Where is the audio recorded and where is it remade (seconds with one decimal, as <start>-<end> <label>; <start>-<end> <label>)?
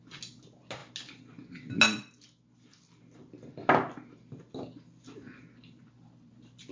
0.0-6.7 recorded